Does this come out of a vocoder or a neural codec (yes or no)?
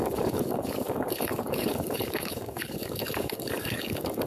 yes